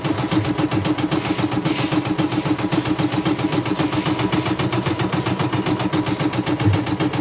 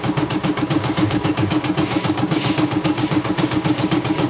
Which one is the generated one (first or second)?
second